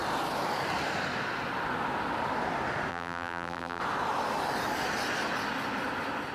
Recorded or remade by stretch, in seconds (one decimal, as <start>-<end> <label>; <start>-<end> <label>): 0.0-2.9 recorded; 2.9-3.8 remade; 3.8-6.3 recorded